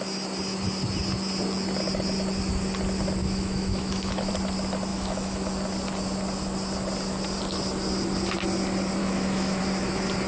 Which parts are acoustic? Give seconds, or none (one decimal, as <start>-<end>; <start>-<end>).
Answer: 0.0-3.2; 4.3-4.9; 5.5-9.0; 9.6-10.3